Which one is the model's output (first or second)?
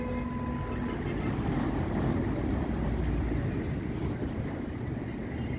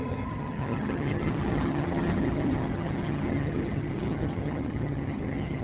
second